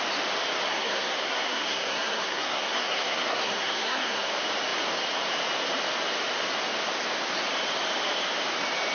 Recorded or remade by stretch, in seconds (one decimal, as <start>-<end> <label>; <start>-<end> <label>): 0.0-0.7 recorded; 0.7-4.3 remade; 4.3-8.9 recorded